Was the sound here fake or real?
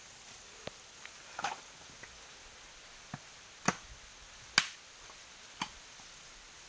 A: real